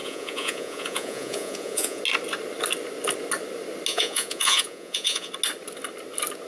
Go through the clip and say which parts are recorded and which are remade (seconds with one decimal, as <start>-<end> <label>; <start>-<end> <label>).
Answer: 0.0-2.0 remade; 2.0-3.9 recorded; 3.9-5.3 remade; 5.3-6.5 recorded

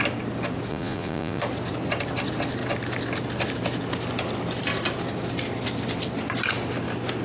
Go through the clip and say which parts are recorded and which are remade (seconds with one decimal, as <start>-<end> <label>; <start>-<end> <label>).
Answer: 0.0-0.7 recorded; 0.7-1.4 remade; 1.4-7.2 recorded

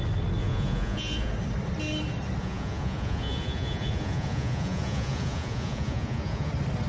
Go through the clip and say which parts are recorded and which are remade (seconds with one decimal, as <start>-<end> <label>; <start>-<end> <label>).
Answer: 0.0-0.4 recorded; 0.4-1.3 remade; 1.3-2.4 recorded; 2.4-6.5 remade; 6.5-6.9 recorded

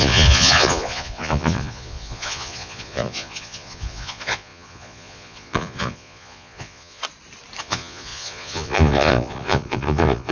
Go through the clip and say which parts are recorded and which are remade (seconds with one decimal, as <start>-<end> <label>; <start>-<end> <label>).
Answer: 0.0-7.0 remade; 7.0-7.6 recorded; 7.6-10.3 remade

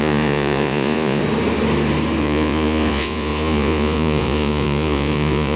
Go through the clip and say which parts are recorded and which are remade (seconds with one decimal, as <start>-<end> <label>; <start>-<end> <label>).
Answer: 0.0-1.2 remade; 1.2-2.2 recorded; 2.2-5.6 remade